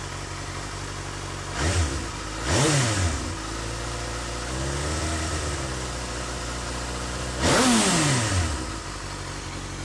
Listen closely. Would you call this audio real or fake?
real